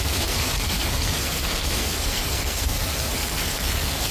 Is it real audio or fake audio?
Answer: fake